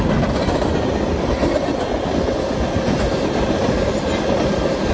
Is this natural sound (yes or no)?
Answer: yes